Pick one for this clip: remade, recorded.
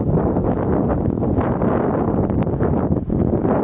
recorded